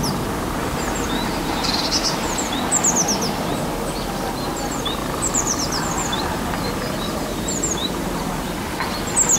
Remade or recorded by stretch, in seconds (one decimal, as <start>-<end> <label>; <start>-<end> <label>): 0.0-0.6 recorded; 0.6-2.6 remade; 2.6-5.0 recorded; 5.0-8.5 remade; 8.5-9.4 recorded